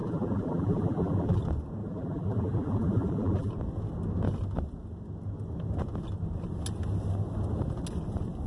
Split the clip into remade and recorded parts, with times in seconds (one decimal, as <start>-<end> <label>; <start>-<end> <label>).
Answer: 0.0-1.4 remade; 1.4-1.8 recorded; 1.8-3.5 remade; 3.5-8.5 recorded